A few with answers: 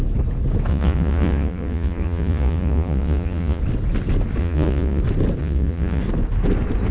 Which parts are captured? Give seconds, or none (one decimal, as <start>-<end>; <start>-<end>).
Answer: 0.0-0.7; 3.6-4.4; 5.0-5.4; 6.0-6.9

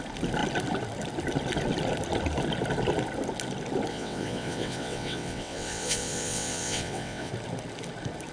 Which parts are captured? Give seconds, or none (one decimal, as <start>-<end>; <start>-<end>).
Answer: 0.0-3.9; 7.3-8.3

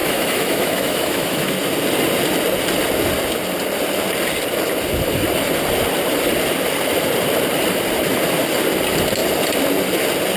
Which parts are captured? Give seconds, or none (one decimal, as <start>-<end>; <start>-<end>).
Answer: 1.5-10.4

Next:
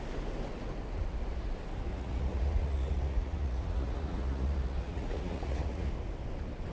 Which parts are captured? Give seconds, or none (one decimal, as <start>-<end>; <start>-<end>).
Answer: 0.0-1.9; 5.9-6.7

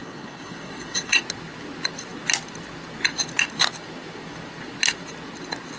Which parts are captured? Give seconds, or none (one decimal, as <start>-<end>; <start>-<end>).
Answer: 1.2-5.8